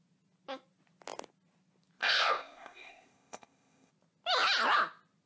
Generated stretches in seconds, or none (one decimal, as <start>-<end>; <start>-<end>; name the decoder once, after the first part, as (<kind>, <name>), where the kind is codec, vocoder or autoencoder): 2.0-3.9 (codec, ZipCodec)

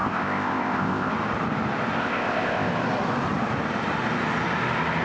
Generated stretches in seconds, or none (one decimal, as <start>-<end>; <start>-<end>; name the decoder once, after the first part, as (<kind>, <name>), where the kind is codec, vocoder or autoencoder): 0.0-1.1 (codec, ZipCodec); 2.0-2.7